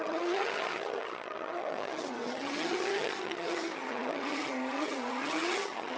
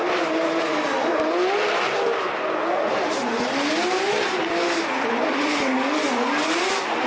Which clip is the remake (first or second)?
first